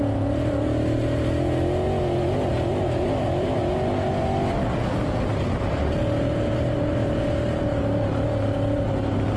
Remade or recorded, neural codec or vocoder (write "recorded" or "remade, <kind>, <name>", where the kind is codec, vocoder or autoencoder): recorded